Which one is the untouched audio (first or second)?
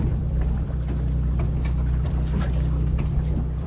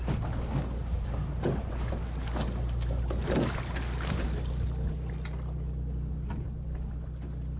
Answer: second